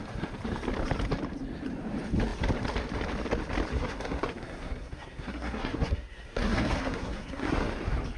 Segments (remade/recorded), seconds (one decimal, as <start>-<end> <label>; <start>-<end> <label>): 0.0-3.7 recorded; 3.7-7.7 remade; 7.7-8.2 recorded